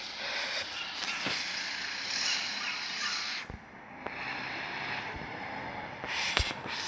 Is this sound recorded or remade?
remade